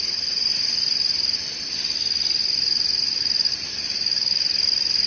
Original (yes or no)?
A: yes